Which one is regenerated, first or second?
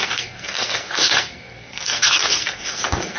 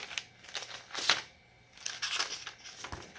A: first